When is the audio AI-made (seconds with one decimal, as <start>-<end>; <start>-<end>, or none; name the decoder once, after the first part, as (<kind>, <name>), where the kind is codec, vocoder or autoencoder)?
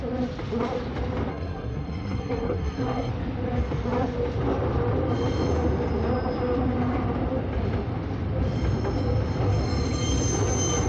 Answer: 1.3-3.1 (codec, SNAC)